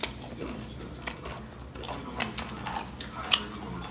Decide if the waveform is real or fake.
real